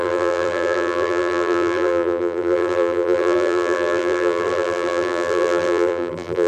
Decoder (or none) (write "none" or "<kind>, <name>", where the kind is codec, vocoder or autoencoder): vocoder, BigVGAN v2